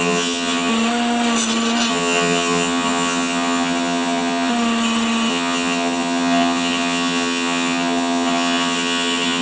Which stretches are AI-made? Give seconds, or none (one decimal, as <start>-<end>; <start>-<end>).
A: 0.0-0.7; 1.9-4.5; 5.3-9.4